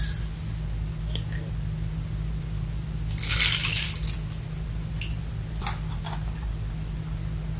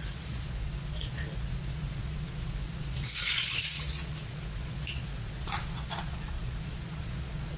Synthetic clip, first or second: second